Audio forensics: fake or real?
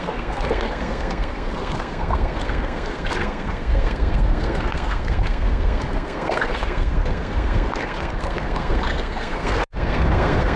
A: fake